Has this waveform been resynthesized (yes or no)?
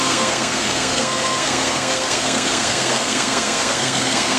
yes